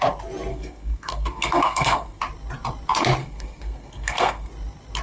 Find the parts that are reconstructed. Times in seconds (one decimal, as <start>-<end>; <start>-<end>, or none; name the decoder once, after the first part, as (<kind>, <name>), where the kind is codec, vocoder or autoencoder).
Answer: 0.5-2.2 (codec, SNAC); 3.2-4.5